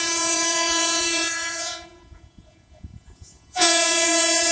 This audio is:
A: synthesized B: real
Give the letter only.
A